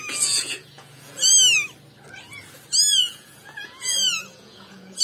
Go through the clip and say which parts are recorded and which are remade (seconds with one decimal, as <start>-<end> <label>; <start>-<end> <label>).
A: 0.0-1.3 remade; 1.3-2.9 recorded; 2.9-5.0 remade